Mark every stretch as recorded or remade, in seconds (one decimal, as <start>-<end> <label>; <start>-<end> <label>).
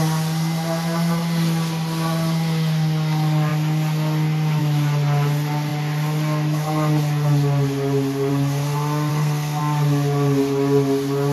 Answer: 0.0-9.1 recorded; 9.1-9.6 remade; 9.6-11.3 recorded